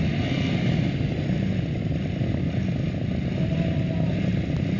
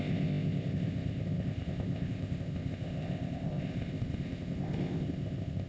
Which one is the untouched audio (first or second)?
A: first